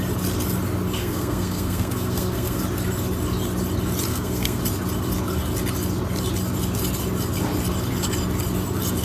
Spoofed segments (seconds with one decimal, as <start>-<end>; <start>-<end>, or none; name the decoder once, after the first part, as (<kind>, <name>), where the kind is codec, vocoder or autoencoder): 1.0-2.6 (codec, SNAC); 4.1-4.6